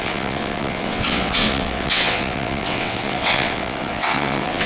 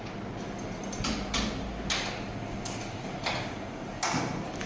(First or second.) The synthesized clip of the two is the first